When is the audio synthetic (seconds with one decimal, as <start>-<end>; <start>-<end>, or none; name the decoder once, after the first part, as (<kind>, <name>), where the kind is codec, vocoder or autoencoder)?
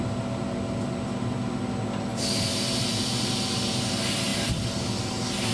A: 2.1-3.3 (vocoder, BigVGAN v2); 4.3-5.0